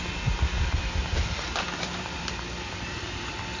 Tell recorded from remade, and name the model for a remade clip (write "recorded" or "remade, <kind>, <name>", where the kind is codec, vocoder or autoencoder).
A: remade, vocoder, BigVGAN v2